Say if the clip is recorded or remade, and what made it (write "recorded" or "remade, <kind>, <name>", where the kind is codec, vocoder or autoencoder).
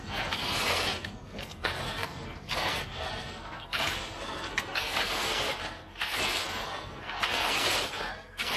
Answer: remade, codec, SNAC